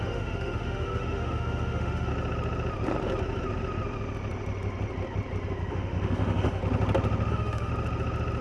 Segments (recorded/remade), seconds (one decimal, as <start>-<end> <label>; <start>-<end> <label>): 0.0-2.1 remade; 2.1-5.7 recorded; 5.7-6.6 remade; 6.6-7.3 recorded; 7.3-7.7 remade; 7.7-8.4 recorded